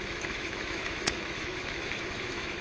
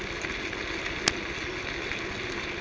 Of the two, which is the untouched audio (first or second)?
second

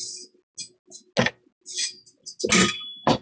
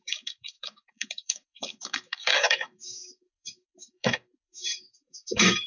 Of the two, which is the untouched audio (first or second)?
first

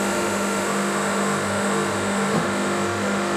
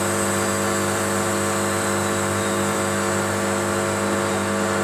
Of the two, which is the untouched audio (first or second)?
second